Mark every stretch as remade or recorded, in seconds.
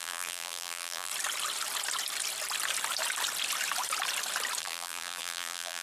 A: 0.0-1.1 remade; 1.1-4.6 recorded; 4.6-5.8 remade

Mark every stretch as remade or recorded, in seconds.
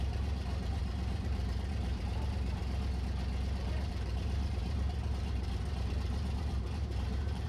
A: 0.0-2.6 remade; 2.6-3.6 recorded; 3.6-7.5 remade